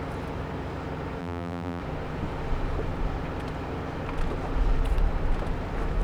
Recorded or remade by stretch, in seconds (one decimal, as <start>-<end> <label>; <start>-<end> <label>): 0.0-1.2 recorded; 1.2-1.8 remade; 1.8-6.0 recorded

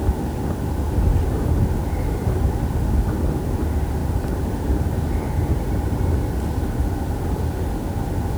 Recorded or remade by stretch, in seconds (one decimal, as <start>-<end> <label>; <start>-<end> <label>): 0.0-1.1 recorded; 1.1-2.4 remade; 2.4-4.0 recorded; 4.0-5.8 remade; 5.8-8.4 recorded